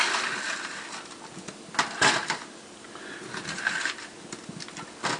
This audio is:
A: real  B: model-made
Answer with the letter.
A